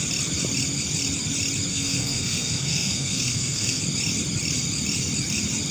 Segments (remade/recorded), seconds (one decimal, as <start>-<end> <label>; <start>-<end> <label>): 0.0-1.7 recorded; 1.7-3.8 remade; 3.8-5.7 recorded